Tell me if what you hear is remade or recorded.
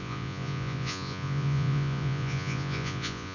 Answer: remade